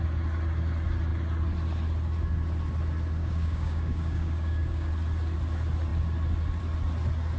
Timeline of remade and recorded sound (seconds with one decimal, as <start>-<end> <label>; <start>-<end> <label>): 0.0-3.2 recorded; 3.2-4.9 remade; 4.9-7.4 recorded